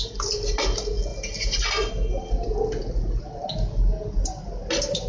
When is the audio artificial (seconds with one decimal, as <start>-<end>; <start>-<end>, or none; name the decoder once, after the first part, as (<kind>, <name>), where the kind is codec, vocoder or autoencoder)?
none